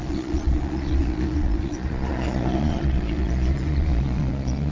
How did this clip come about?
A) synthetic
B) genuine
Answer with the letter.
A